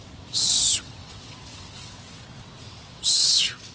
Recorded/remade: remade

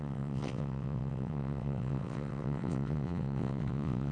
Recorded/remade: remade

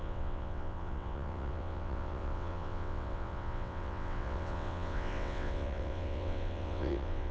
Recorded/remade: remade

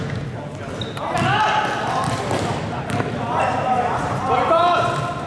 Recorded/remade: recorded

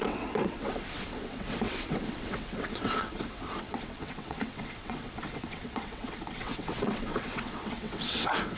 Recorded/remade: remade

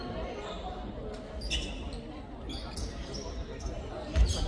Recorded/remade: recorded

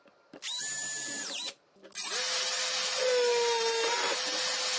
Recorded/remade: recorded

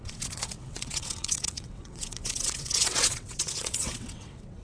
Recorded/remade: remade